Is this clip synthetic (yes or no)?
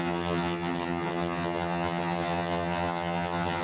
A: yes